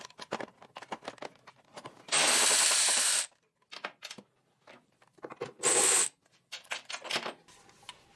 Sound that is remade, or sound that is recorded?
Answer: recorded